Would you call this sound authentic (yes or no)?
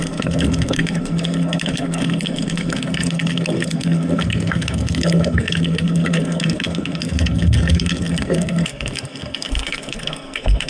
no